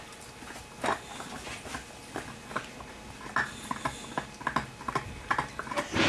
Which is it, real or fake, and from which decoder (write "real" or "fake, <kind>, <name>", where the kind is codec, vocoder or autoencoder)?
real